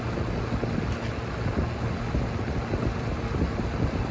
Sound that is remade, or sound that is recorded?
recorded